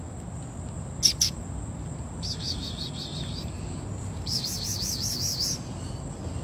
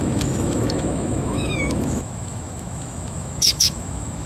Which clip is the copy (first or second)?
second